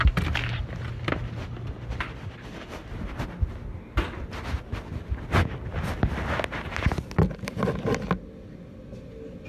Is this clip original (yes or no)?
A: yes